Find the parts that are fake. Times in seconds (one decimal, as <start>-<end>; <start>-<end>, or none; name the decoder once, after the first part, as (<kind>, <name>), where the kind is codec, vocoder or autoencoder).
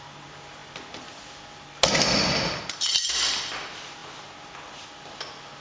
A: none